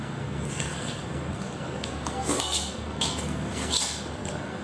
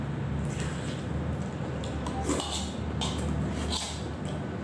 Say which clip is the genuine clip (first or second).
second